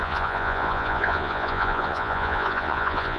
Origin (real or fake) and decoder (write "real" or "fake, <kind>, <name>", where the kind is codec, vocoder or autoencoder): fake, vocoder, Vocos